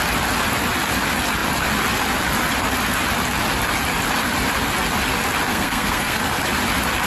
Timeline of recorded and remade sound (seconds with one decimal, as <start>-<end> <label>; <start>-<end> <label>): 0.0-5.5 recorded; 5.5-6.4 remade; 6.4-7.1 recorded